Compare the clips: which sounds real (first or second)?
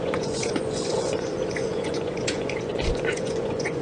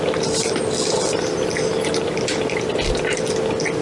second